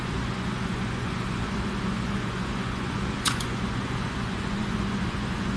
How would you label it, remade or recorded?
remade